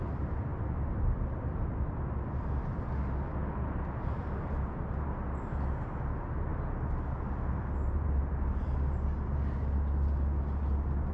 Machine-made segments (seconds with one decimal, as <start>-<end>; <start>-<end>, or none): none